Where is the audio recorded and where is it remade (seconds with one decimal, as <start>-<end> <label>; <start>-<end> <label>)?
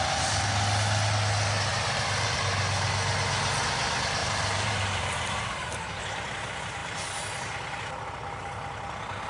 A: 0.0-1.7 recorded; 1.7-2.4 remade; 2.4-4.2 recorded; 4.2-6.0 remade; 6.0-9.3 recorded